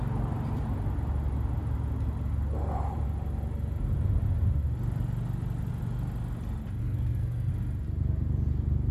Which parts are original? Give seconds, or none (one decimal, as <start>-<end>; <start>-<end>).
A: 0.0-6.8; 7.5-8.9